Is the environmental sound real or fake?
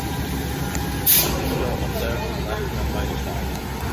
real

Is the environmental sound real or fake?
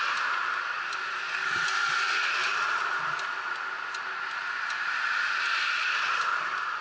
real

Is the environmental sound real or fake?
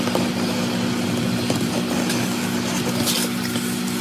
real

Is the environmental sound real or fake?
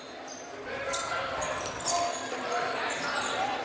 real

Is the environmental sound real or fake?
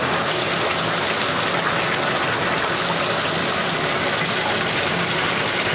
real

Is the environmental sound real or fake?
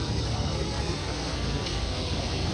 fake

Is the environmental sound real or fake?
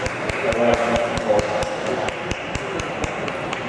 real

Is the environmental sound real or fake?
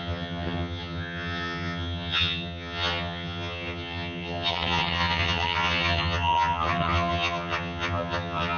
fake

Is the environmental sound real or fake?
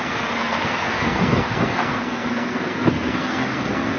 fake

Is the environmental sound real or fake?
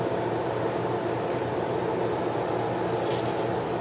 real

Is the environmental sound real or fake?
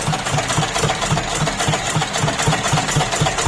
real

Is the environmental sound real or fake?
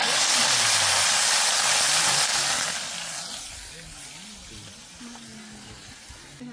real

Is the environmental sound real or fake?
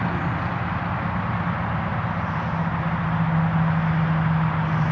real